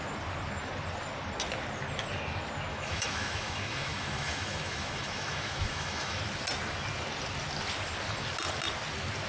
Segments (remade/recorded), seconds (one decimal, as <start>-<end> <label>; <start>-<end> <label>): 0.0-2.7 recorded; 2.7-6.2 remade; 6.2-9.3 recorded